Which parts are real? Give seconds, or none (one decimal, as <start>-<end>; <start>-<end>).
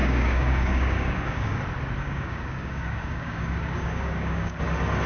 1.6-2.0; 4.6-5.1